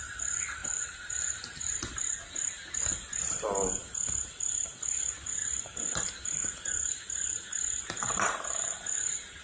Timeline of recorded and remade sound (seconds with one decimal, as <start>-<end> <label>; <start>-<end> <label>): 0.0-0.6 recorded; 0.6-2.0 remade; 2.0-5.4 recorded; 5.4-7.8 remade; 7.8-9.4 recorded